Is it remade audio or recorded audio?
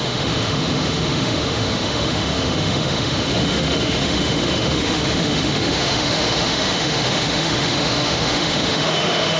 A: remade